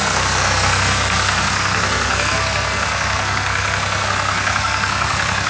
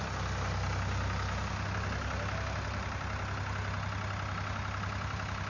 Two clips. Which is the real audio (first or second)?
second